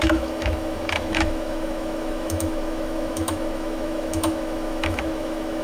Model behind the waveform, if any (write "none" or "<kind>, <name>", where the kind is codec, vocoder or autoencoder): autoencoder, DAC-VAE